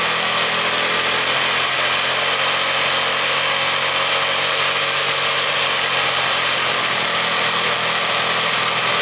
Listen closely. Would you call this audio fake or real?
real